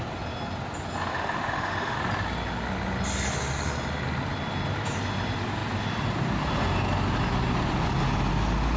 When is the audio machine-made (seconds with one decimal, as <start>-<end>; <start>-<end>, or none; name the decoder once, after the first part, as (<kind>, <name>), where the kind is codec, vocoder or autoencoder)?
1.1-2.0 (autoencoder, DAC-VAE)